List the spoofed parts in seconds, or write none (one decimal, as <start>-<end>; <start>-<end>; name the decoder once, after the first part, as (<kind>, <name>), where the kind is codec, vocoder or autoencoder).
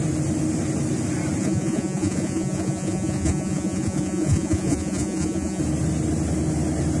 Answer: 1.4-5.6 (vocoder, Vocos)